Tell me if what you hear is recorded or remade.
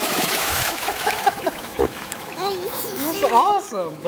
remade